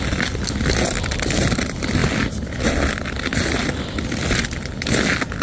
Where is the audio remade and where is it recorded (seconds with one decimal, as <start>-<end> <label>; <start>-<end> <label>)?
0.0-5.4 recorded

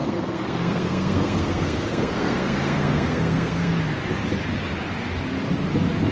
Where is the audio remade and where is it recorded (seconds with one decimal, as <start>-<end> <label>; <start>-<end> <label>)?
0.0-3.7 remade; 3.7-6.1 recorded

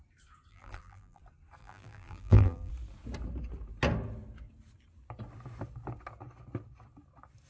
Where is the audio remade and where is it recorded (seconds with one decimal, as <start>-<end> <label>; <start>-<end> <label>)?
0.0-0.5 recorded; 0.5-1.2 remade; 1.2-1.6 recorded; 1.6-2.7 remade; 2.7-7.5 recorded

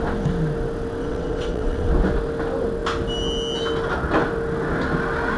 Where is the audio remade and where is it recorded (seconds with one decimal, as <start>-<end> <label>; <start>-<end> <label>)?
0.0-1.0 recorded; 1.0-1.9 remade; 1.9-5.4 recorded